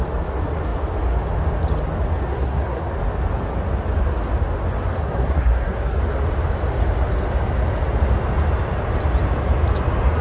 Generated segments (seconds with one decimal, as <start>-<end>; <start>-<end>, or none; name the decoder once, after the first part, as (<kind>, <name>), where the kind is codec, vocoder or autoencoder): 2.3-2.9 (codec, SNAC); 5.0-6.0

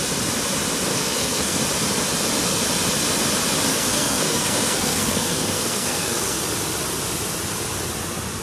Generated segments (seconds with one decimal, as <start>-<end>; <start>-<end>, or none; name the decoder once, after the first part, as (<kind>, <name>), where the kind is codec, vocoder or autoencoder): 0.9-1.6 (codec, SNAC); 3.7-6.4

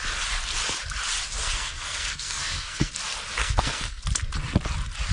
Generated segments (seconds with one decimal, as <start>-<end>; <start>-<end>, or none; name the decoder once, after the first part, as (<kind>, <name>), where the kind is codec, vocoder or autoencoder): 1.4-2.9 (codec, SNAC); 3.4-4.0

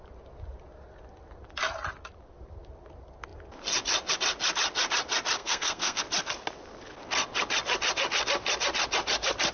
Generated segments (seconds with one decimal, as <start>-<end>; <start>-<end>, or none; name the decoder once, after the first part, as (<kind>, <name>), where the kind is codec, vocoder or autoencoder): 5.4-6.0 (codec, SNAC)

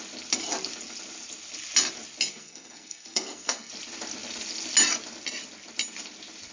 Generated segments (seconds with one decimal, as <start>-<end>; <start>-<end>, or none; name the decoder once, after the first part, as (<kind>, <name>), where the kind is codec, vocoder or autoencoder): 2.3-3.7 (codec, SNAC)

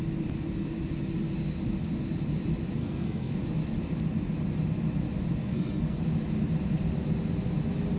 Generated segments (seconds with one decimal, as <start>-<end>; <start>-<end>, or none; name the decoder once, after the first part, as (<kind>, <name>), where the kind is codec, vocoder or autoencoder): 2.8-3.3 (codec, SNAC); 5.4-6.0

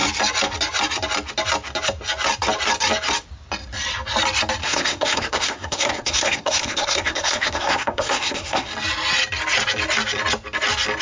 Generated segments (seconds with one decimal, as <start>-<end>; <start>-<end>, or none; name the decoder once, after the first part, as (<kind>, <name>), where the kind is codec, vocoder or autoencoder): 4.6-8.7 (codec, SNAC)

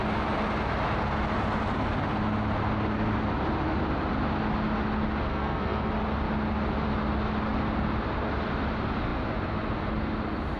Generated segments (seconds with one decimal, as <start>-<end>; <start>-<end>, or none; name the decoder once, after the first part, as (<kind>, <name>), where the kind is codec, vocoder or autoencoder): 5.3-5.9 (codec, SNAC)